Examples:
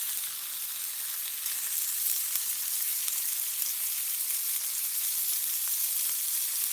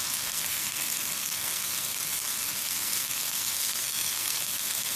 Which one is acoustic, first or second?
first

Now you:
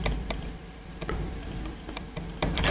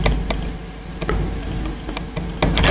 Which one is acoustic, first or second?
second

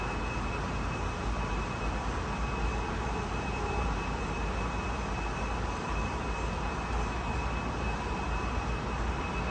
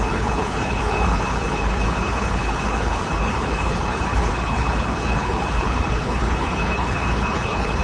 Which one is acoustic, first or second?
first